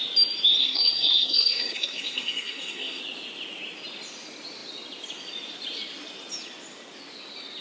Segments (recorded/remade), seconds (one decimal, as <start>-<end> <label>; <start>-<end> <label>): 0.0-0.6 recorded; 0.6-3.0 remade; 3.0-7.6 recorded